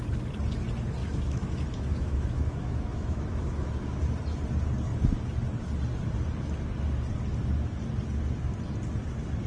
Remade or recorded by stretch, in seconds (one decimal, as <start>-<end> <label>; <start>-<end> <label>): 0.0-1.0 recorded; 1.0-4.0 remade; 4.0-9.5 recorded